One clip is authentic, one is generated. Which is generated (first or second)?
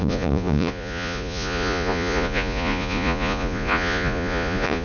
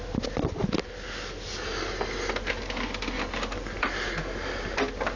first